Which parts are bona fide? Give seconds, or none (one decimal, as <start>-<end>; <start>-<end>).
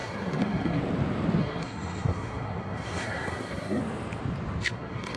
0.8-1.4; 3.8-4.6